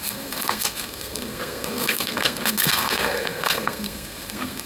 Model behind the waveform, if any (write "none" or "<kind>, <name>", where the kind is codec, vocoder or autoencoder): codec, SNAC